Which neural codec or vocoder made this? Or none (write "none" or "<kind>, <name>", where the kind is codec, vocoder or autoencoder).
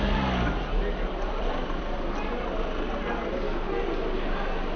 none